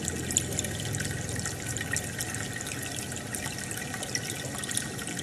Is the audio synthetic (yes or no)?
no